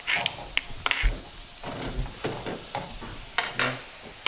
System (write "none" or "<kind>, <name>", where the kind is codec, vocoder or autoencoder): none